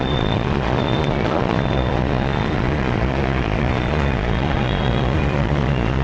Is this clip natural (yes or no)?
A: no